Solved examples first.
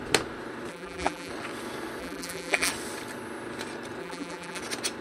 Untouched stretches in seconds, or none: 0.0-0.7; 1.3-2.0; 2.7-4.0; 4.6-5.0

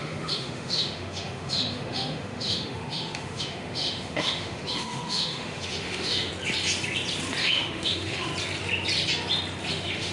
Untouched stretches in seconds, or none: 6.3-7.4; 8.3-9.7

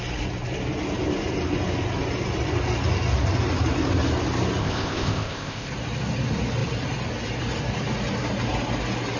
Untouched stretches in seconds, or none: 0.0-4.6; 5.7-9.2

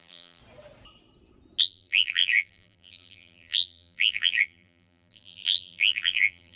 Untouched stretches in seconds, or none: 0.4-1.6

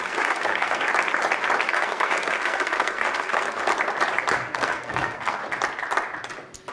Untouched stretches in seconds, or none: 0.9-1.7; 3.7-4.3; 5.4-6.7